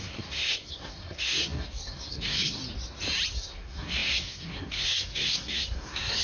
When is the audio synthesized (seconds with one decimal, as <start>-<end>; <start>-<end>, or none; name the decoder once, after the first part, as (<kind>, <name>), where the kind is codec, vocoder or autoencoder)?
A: 0.0-2.6 (codec, SNAC); 3.3-6.2